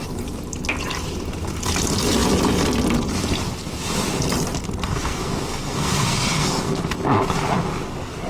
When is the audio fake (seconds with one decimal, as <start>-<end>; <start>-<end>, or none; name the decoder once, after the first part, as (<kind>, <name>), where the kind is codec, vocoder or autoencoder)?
4.9-6.8 (codec, SNAC)